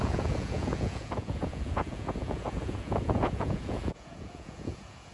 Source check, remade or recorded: remade